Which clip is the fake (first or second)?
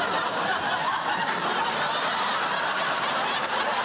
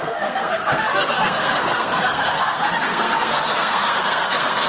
second